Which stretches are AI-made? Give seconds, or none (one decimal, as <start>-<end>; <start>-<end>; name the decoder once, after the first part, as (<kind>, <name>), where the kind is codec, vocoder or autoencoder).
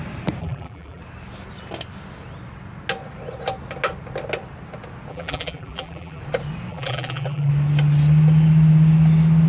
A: 0.4-1.0 (vocoder, BigVGAN v2); 5.1-6.2; 6.7-7.5